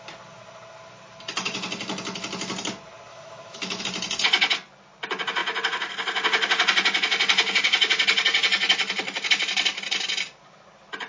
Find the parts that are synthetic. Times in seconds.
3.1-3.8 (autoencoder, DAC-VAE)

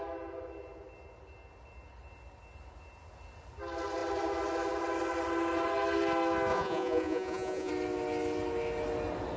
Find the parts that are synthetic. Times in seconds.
6.5-7.7 (vocoder, Vocos)

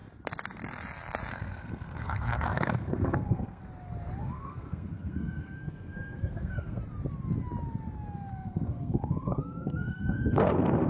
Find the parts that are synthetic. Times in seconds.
1.3-3.6 (codec, SNAC); 4.2-6.8; 8.3-10.9